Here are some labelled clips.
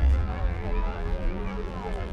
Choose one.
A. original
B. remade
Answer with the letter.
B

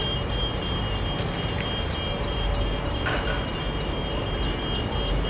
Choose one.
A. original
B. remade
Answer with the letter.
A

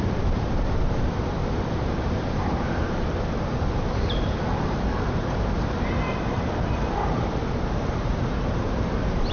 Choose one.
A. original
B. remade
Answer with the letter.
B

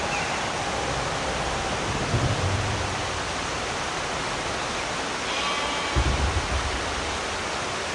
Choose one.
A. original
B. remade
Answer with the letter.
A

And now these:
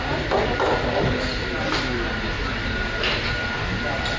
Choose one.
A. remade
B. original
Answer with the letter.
B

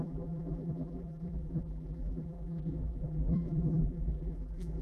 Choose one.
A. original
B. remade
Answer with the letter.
B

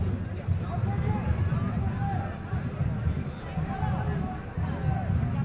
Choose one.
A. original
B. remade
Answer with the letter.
A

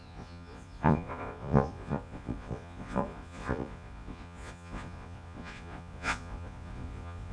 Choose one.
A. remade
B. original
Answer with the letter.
A